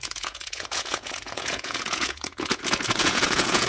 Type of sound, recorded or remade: remade